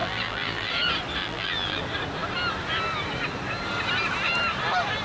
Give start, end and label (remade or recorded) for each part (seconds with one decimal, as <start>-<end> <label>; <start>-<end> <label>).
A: 0.0-0.7 remade; 0.7-1.2 recorded; 1.2-1.8 remade; 1.8-5.0 recorded